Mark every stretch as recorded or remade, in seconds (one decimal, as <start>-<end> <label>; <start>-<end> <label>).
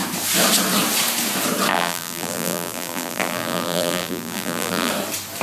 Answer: 0.0-1.7 recorded; 1.7-4.9 remade; 4.9-5.4 recorded